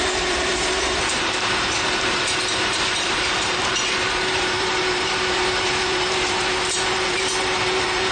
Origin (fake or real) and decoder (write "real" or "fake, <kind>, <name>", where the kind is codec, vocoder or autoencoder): fake, vocoder, BigVGAN v2